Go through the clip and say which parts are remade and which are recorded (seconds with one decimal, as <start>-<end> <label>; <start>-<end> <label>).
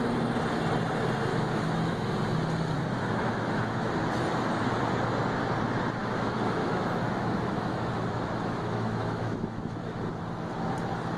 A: 0.0-1.3 recorded; 1.3-2.1 remade; 2.1-3.0 recorded; 3.0-3.9 remade; 3.9-6.0 recorded; 6.0-10.1 remade; 10.1-11.2 recorded